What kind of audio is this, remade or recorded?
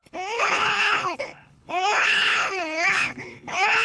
remade